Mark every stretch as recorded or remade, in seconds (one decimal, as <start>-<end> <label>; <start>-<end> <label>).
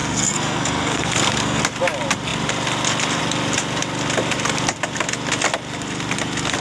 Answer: 0.0-1.6 remade; 1.6-6.6 recorded